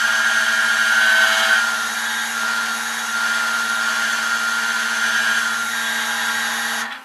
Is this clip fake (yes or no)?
no